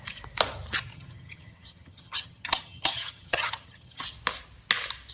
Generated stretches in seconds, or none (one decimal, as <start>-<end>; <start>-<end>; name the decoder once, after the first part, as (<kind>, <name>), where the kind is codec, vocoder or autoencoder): 0.9-4.0 (vocoder, HiFi-GAN)